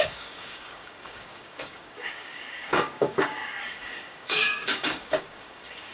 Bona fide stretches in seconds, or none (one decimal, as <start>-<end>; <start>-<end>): none